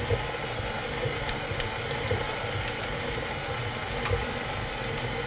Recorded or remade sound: recorded